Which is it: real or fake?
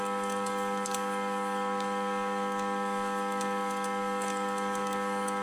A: fake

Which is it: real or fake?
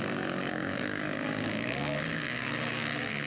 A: fake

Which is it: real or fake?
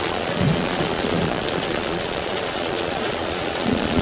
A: fake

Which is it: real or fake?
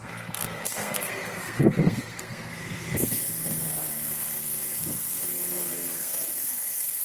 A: fake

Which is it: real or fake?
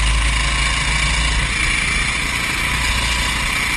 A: real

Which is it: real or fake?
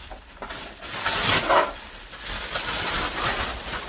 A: real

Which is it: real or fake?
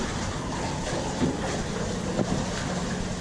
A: real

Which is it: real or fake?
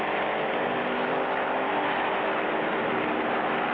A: real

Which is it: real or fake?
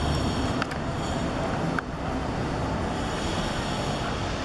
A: real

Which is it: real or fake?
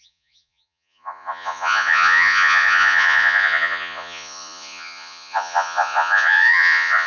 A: fake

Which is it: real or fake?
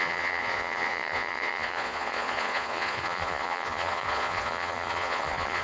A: fake